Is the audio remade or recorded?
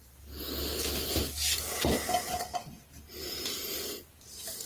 recorded